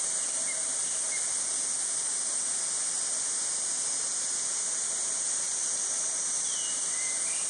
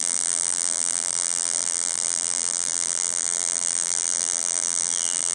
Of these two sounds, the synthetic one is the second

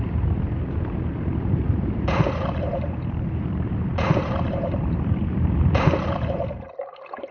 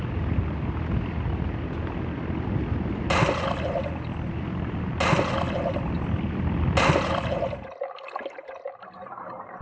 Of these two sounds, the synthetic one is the first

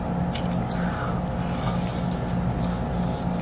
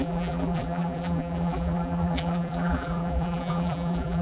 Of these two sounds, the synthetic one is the second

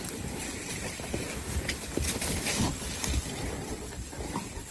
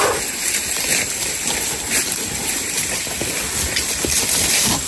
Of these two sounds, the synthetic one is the first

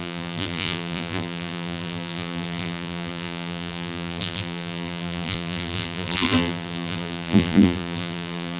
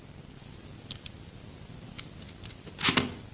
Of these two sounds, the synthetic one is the first